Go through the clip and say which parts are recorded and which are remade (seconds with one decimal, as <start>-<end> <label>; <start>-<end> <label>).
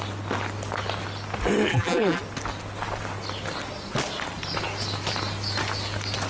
0.0-1.7 recorded; 1.7-2.2 remade; 2.2-6.3 recorded